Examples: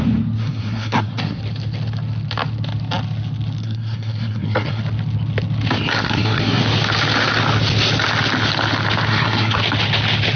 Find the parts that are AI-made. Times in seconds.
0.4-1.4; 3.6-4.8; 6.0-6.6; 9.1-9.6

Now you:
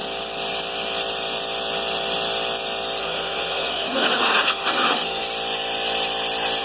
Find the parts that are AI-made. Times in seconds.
3.0-5.2

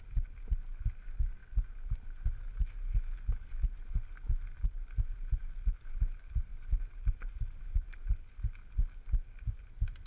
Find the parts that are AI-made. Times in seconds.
none

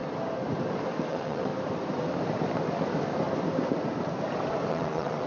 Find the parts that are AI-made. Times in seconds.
1.1-1.5; 4.7-5.3

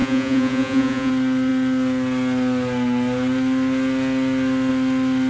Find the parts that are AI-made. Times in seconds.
0.0-1.1

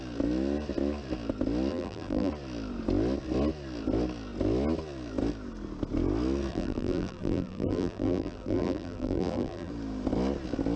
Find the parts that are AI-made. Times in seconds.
1.7-2.3; 6.5-9.7

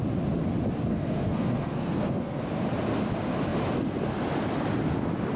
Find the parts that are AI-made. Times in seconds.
0.9-2.4